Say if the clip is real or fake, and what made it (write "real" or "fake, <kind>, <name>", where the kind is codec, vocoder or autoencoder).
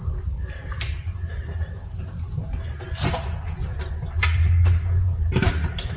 fake, vocoder, BigVGAN v2